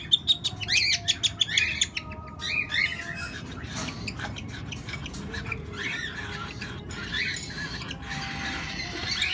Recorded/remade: recorded